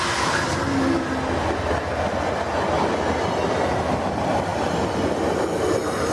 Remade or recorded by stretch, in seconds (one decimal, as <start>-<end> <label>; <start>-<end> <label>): 0.0-6.1 recorded